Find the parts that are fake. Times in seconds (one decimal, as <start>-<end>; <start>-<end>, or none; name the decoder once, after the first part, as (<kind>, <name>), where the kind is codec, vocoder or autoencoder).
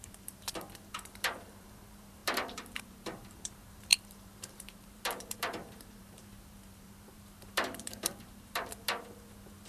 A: 0.0-9.7 (vocoder, BigVGAN v2)